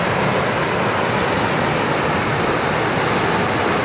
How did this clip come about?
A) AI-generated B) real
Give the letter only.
B